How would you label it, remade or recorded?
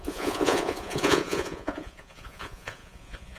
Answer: remade